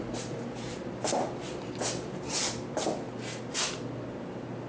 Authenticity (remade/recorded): recorded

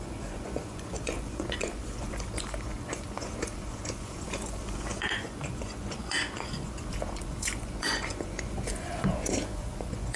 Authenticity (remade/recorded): remade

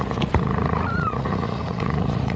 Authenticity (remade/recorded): remade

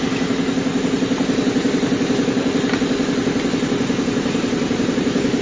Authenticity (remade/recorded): recorded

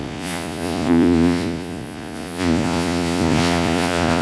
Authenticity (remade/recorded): remade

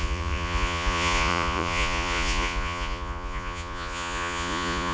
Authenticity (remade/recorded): remade